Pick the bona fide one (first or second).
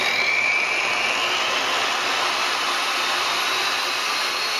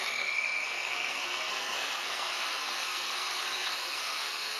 first